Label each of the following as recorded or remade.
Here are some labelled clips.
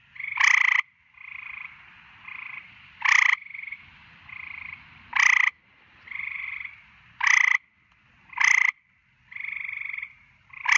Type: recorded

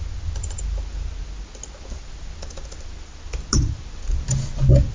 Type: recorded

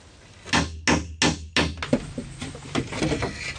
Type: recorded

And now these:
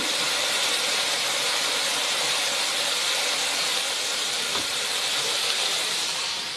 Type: remade